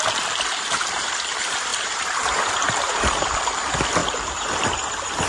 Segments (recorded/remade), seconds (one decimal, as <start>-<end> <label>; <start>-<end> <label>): 0.0-1.7 recorded; 1.7-3.4 remade; 3.4-5.3 recorded